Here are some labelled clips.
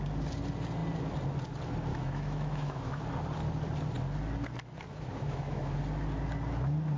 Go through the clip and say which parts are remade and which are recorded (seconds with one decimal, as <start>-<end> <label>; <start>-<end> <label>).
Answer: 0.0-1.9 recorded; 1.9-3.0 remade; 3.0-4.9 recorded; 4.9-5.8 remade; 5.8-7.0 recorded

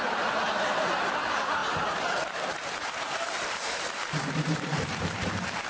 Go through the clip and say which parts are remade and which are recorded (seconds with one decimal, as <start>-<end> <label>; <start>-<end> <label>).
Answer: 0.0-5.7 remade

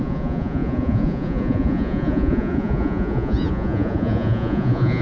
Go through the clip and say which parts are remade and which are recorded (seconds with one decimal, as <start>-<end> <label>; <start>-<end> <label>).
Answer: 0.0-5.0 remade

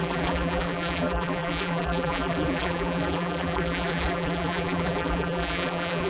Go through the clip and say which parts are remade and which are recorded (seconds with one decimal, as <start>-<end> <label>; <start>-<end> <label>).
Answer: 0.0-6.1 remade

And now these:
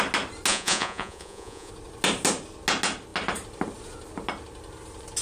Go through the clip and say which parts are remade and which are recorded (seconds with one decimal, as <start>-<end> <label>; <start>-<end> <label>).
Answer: 0.0-0.5 recorded; 0.5-1.7 remade; 1.7-5.2 recorded